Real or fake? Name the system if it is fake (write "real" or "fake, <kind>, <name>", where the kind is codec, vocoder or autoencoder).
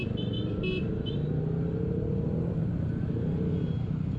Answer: real